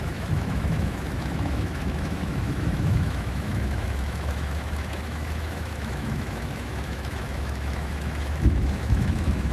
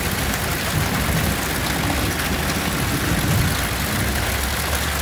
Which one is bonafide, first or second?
second